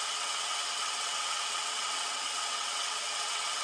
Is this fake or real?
fake